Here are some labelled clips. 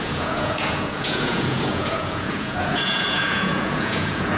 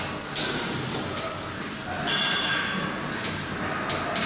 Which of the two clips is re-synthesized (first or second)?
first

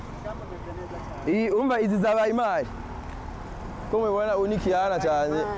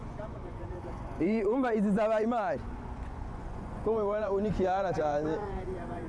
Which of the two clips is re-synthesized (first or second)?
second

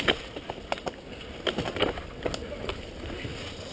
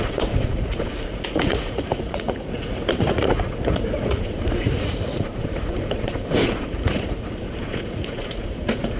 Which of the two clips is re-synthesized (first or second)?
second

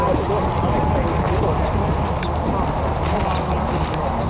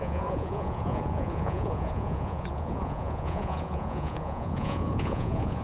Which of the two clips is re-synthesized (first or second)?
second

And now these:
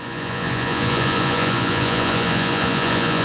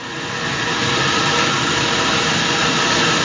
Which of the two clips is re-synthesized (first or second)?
first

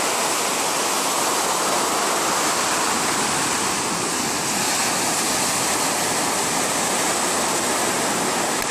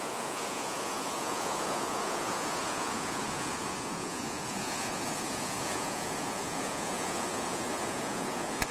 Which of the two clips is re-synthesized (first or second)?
second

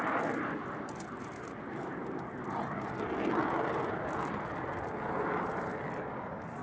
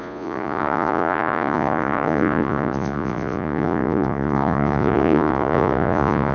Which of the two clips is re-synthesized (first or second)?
second